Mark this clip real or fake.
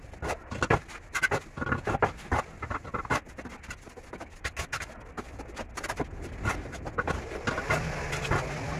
real